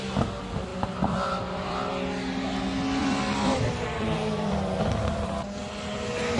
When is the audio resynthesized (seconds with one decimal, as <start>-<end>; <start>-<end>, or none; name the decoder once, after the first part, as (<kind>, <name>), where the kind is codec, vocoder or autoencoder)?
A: 0.7-1.9 (vocoder, BigVGAN v2); 3.0-5.6